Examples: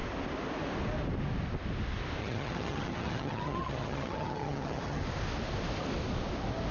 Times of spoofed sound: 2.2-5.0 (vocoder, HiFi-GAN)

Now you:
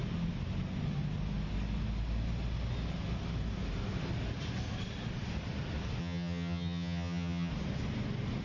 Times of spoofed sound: 6.0-7.5 (vocoder, HiFi-GAN)

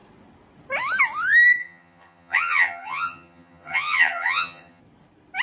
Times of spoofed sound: 1.6-4.8 (vocoder, HiFi-GAN)

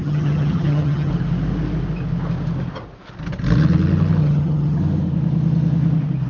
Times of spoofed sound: 0.0-1.1 (vocoder, HiFi-GAN); 4.2-4.8